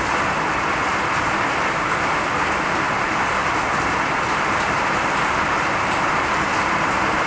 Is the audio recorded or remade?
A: recorded